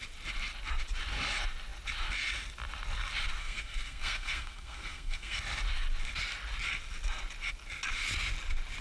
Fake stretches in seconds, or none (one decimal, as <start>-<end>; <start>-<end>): 3.4-5.4